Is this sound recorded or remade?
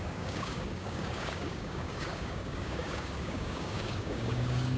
remade